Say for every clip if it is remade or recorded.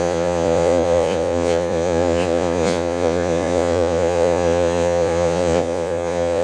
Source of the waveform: remade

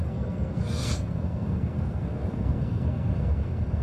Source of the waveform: remade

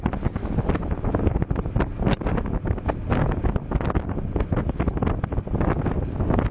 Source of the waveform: recorded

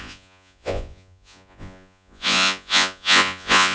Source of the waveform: remade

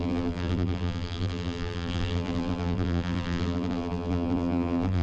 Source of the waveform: remade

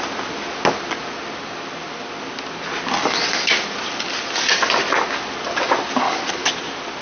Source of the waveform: recorded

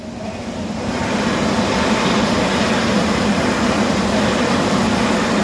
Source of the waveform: recorded